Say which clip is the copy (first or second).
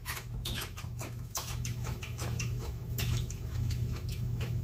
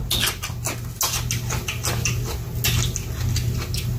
first